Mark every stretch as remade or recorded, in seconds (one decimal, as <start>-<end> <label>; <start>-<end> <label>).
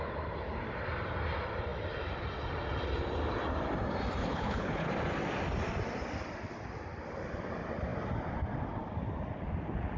0.0-4.2 recorded; 4.2-4.9 remade; 4.9-10.0 recorded